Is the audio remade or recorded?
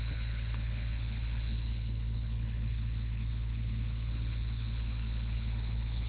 remade